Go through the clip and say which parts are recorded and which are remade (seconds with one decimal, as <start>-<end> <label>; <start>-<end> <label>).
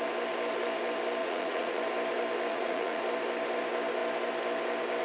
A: 0.0-1.2 recorded; 1.2-1.8 remade; 1.8-2.5 recorded; 2.5-3.0 remade; 3.0-5.0 recorded